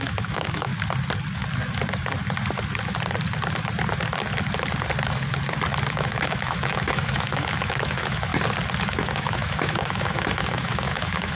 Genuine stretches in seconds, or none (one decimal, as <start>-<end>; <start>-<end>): 0.7-5.9; 8.3-8.8